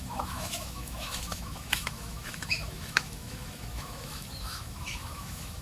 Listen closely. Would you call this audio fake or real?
fake